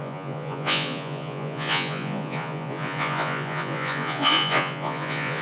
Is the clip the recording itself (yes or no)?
no